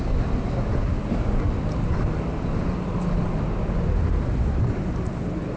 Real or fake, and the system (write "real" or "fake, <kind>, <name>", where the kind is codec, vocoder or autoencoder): real